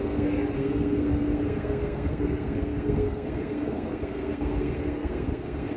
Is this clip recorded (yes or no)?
no